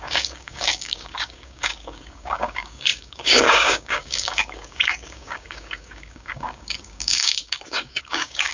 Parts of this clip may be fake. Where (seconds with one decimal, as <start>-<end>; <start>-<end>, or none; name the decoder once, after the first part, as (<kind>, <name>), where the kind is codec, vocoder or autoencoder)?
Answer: 0.0-8.5 (codec, DAC)